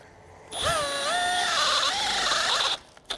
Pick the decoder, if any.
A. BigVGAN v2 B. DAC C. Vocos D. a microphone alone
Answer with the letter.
D